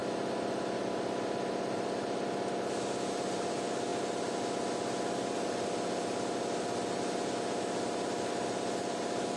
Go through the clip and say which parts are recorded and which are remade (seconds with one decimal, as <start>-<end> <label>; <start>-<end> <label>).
0.0-9.4 recorded